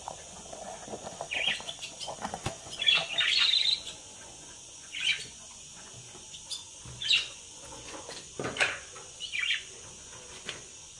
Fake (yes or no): yes